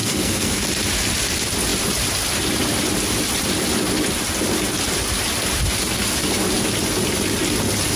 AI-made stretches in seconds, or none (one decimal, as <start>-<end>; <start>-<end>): 0.0-0.6